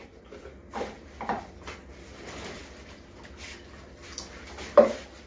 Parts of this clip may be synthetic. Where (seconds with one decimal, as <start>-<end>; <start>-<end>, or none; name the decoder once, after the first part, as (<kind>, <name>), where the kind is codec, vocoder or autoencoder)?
none